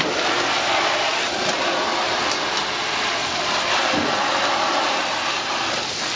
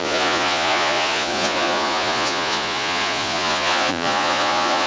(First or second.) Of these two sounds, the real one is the first